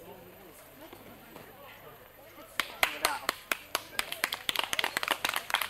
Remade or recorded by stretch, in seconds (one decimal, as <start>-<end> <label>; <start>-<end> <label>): 0.0-5.7 remade